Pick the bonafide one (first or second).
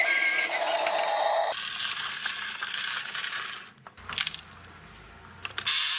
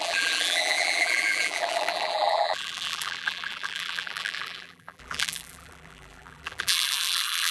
first